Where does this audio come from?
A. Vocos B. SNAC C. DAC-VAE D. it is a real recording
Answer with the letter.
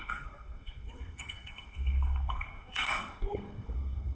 B